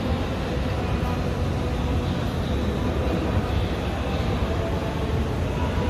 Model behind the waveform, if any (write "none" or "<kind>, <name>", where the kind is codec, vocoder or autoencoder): none